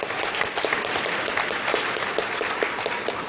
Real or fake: real